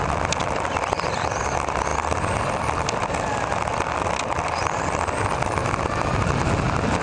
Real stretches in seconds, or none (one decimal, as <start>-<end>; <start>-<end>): 0.0-7.0